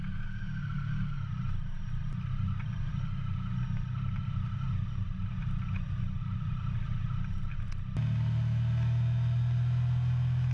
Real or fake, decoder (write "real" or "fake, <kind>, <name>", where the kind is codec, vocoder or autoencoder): real